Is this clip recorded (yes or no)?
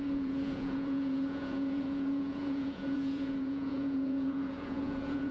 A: no